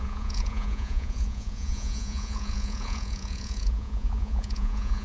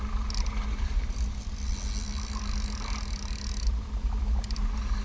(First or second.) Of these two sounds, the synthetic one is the first